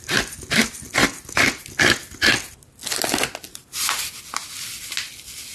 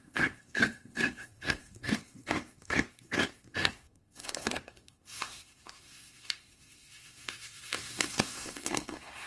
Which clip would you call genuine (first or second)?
first